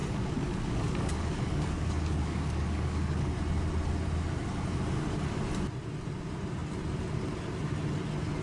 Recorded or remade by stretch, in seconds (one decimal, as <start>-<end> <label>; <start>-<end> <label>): 0.0-3.3 remade; 3.3-8.4 recorded